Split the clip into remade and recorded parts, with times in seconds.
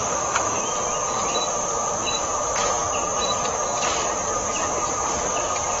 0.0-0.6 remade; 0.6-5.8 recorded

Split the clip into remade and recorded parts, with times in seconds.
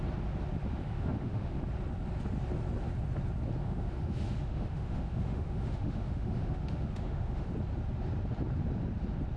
0.0-0.8 recorded; 0.8-1.6 remade; 1.6-3.6 recorded; 3.6-7.5 remade; 7.5-9.4 recorded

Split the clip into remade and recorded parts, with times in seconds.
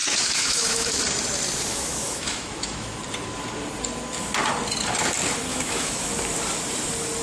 0.0-1.0 remade; 1.0-1.7 recorded; 1.7-3.0 remade; 3.0-5.5 recorded; 5.5-6.1 remade; 6.1-7.2 recorded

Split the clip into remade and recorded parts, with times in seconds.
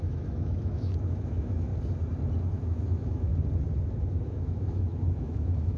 0.0-1.7 remade; 1.7-2.5 recorded; 2.5-3.3 remade; 3.3-4.1 recorded; 4.1-5.8 remade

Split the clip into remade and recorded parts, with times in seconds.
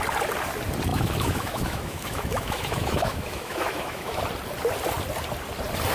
0.0-0.9 recorded; 0.9-4.2 remade; 4.2-5.9 recorded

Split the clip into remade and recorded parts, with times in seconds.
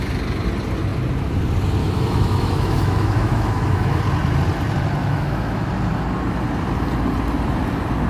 0.0-1.8 recorded; 1.8-4.0 remade; 4.0-5.0 recorded; 5.0-5.7 remade; 5.7-8.1 recorded